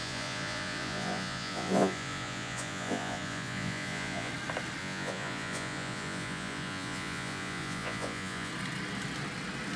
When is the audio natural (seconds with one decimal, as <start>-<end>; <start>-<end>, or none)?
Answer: 4.3-4.8; 8.5-9.8